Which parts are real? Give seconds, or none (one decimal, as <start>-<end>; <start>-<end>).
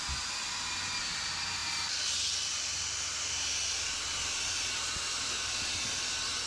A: 0.0-6.5